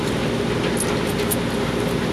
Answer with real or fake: real